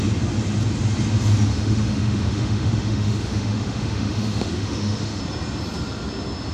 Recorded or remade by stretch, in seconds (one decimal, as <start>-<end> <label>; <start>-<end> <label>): 0.0-1.5 recorded; 1.5-5.2 remade; 5.2-6.5 recorded